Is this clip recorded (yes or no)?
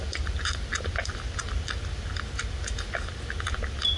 yes